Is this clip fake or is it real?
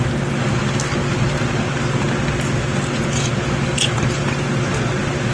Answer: real